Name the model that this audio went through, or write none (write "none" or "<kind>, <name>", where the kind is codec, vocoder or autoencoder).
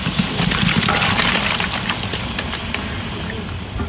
none